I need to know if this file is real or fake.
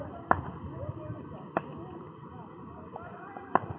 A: real